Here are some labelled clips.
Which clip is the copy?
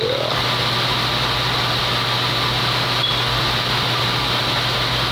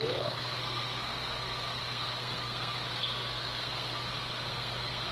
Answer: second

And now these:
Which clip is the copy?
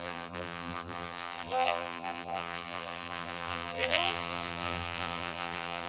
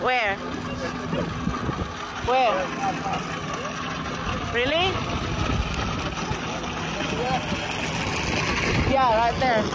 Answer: first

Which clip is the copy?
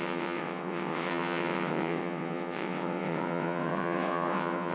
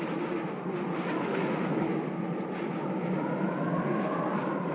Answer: first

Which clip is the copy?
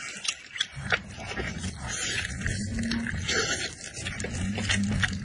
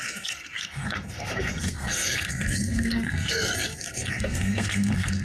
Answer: second